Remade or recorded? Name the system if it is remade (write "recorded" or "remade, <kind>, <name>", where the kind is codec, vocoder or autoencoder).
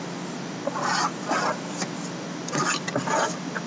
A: recorded